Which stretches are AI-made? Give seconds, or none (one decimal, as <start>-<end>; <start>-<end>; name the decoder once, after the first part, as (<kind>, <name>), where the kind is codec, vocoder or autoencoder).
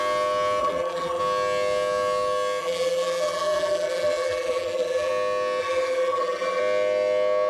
0.6-1.2 (vocoder, BigVGAN v2); 2.6-5.1; 5.6-6.6